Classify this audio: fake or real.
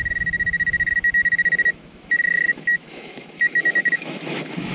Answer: fake